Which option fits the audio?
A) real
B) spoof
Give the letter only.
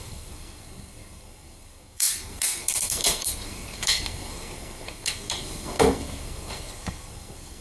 B